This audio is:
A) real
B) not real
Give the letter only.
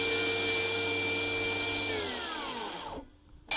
A